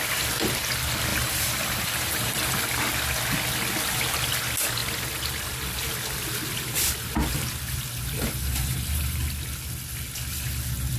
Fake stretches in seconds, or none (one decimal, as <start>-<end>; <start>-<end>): 1.1-2.7; 8.2-9.2